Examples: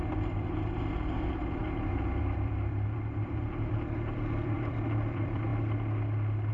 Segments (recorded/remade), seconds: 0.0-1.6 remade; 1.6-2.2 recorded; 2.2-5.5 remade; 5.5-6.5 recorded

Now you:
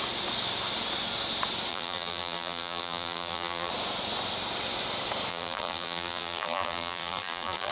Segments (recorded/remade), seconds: 0.0-1.7 recorded; 1.7-3.7 remade; 3.7-5.3 recorded; 5.3-7.7 remade

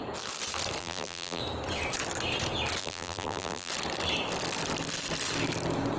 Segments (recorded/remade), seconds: 0.0-0.8 recorded; 0.8-1.4 remade; 1.4-2.8 recorded; 2.8-3.7 remade; 3.7-6.0 recorded

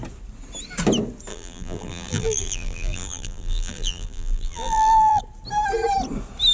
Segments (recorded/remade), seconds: 0.0-1.3 recorded; 1.3-5.2 remade; 5.2-6.5 recorded

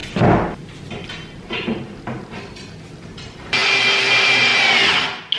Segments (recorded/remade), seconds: 0.0-3.2 recorded; 3.2-3.6 remade; 3.6-4.1 recorded; 4.1-4.5 remade; 4.5-5.4 recorded

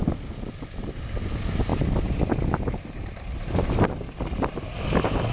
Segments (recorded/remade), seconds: 0.0-1.7 remade; 1.7-5.3 recorded

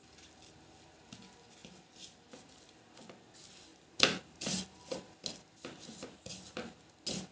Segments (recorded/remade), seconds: 0.0-7.3 recorded

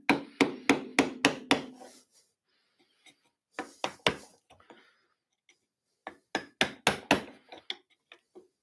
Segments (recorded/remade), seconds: 0.0-8.6 recorded